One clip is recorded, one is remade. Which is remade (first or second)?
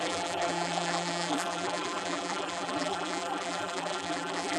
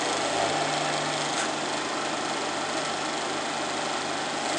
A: first